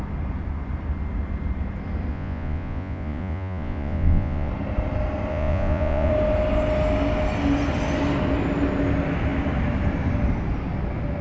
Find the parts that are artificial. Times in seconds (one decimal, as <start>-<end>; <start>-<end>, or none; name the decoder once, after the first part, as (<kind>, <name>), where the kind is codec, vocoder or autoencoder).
2.1-4.5 (vocoder, Vocos); 5.3-6.1